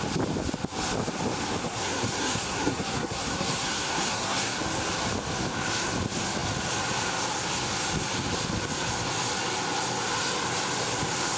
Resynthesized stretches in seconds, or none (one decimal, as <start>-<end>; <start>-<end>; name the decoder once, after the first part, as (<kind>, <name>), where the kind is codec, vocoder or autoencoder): 1.6-4.6 (codec, SNAC)